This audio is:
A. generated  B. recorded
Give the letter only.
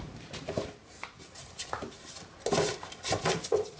B